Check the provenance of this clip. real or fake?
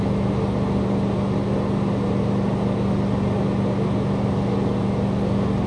real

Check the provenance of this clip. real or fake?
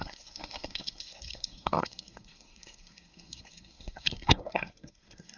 fake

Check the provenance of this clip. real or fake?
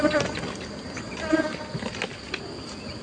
real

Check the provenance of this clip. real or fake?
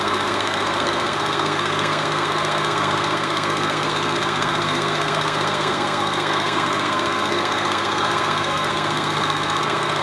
fake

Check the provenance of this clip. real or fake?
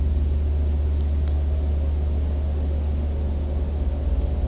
real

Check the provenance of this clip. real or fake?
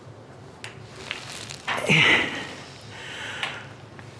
real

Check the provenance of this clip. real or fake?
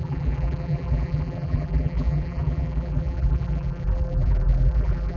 fake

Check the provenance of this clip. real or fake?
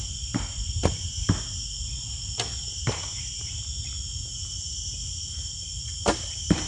real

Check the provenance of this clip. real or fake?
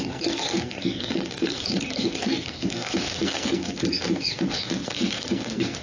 fake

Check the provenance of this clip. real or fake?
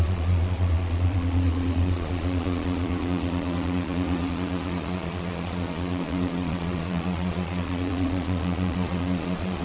fake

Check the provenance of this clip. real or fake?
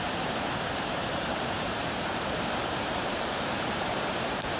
fake